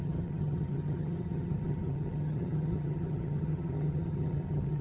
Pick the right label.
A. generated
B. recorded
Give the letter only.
A